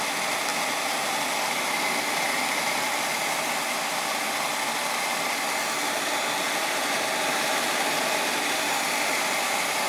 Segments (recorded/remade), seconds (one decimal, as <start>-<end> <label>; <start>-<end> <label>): 0.0-9.9 recorded